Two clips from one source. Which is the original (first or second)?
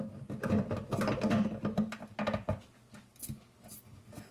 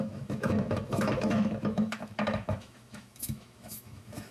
first